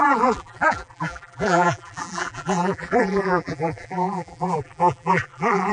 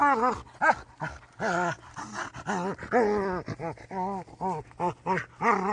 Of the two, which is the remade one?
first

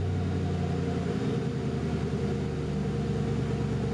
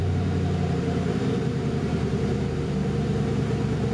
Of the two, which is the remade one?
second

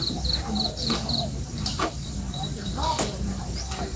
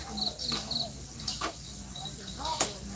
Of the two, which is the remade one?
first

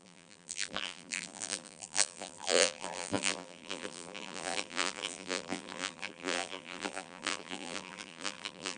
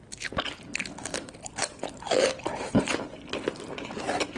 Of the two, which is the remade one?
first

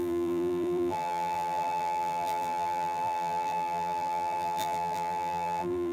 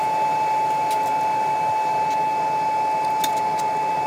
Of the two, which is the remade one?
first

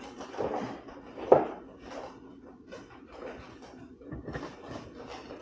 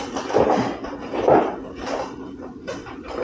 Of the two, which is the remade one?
second